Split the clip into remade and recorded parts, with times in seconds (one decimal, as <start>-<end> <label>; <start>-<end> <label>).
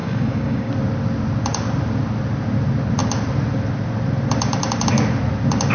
0.0-0.7 remade; 0.7-5.7 recorded